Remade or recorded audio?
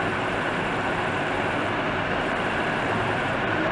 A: remade